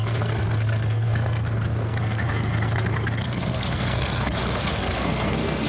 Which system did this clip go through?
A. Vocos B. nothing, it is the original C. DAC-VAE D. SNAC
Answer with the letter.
D